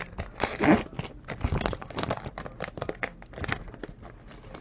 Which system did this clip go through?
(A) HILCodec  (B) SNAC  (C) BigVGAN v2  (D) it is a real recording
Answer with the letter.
C